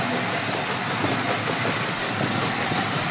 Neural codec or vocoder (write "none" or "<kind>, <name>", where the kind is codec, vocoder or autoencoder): none